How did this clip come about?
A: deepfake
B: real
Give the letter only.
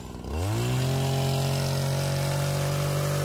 B